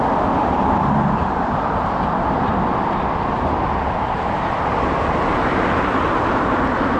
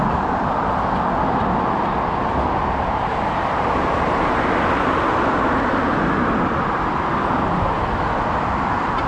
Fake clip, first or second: first